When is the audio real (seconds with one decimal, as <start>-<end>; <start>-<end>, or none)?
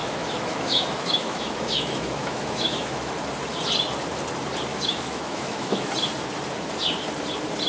3.1-4.7; 5.9-7.7